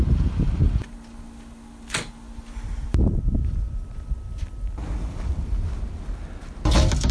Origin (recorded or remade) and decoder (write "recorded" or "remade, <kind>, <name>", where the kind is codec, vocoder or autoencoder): recorded